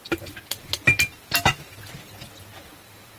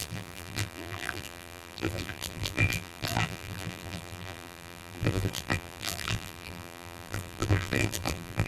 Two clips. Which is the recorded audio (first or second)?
first